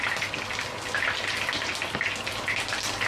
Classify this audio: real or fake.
real